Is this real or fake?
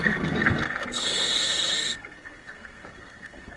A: fake